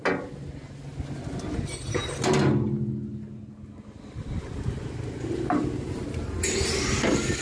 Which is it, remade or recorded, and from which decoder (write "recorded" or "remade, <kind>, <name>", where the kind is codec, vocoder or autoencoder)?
recorded